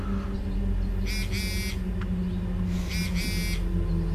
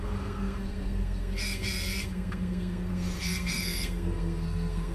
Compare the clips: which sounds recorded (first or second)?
first